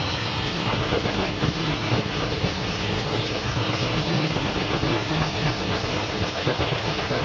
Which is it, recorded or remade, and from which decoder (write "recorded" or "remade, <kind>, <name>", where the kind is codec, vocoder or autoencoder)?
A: remade, codec, SNAC